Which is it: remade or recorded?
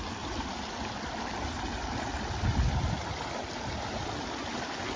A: recorded